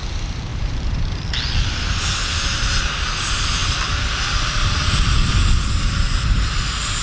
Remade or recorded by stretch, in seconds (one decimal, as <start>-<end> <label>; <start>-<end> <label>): 0.0-0.5 recorded; 0.5-1.3 remade; 1.3-3.6 recorded; 3.6-5.3 remade; 5.3-7.0 recorded